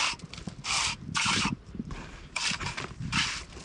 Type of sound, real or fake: fake